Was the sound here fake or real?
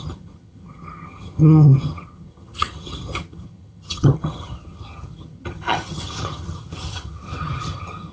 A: fake